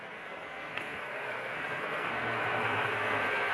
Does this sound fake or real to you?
fake